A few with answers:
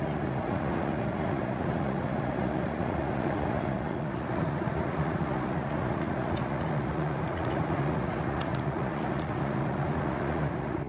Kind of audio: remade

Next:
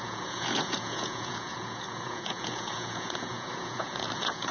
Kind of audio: remade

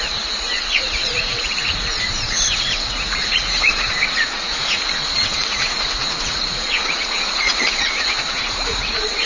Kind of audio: remade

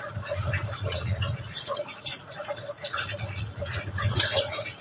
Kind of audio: remade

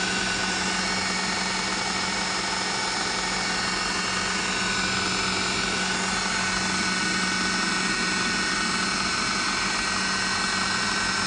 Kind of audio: recorded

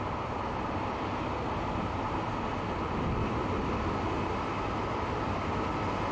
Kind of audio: recorded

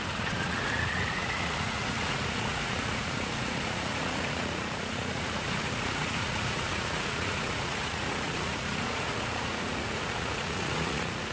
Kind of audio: remade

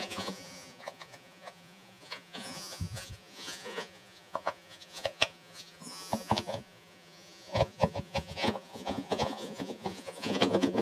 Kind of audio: remade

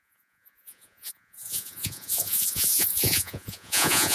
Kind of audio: remade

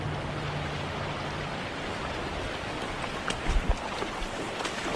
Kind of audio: recorded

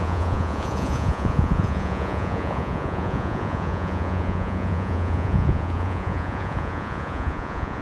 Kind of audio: remade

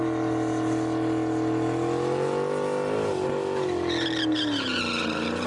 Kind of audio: recorded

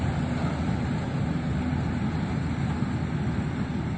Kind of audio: recorded